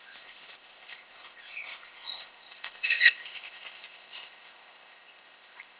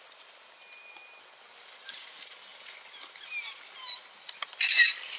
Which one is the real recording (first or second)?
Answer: second